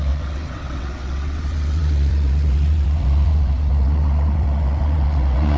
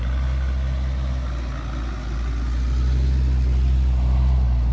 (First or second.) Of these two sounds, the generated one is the first